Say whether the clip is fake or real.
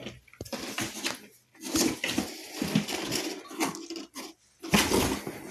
real